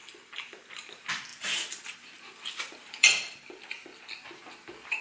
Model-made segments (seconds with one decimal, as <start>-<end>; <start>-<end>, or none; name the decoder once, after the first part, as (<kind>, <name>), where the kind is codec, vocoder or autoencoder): 0.0-0.5 (vocoder, BigVGAN v2); 1.3-3.6

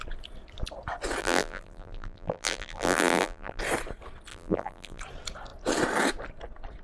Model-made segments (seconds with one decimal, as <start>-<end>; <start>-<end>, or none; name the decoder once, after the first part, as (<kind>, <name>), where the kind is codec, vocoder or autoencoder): 1.2-3.6 (vocoder, BigVGAN v2); 4.3-5.0